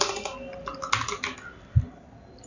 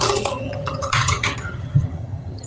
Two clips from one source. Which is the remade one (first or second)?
second